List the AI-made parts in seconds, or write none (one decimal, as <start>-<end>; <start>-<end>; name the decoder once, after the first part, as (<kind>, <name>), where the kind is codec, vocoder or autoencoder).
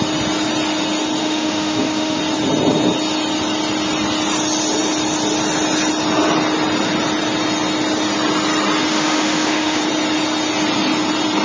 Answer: 1.2-2.2 (autoencoder, DAC-VAE); 8.9-9.8